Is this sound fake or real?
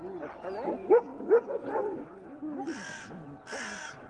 real